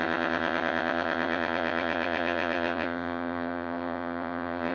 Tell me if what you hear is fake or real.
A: fake